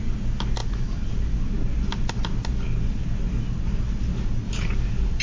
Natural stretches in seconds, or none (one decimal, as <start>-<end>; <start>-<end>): 0.0-0.6; 1.1-5.2